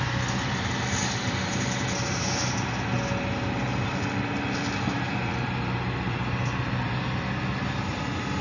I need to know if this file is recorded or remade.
recorded